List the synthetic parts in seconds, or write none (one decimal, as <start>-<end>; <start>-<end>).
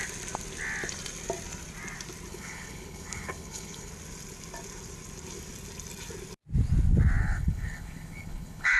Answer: 2.3-3.9; 7.2-8.8